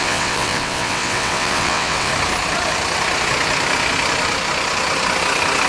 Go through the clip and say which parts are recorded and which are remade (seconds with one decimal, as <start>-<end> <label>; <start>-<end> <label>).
0.0-2.1 remade; 2.1-5.7 recorded